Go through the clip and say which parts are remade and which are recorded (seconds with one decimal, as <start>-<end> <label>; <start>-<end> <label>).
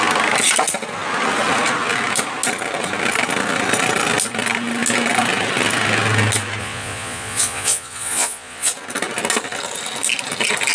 0.0-6.6 recorded; 6.6-8.7 remade; 8.7-10.7 recorded